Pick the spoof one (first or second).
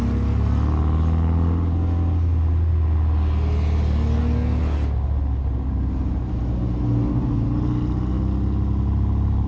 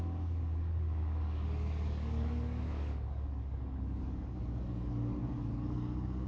second